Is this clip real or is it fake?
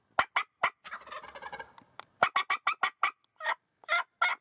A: real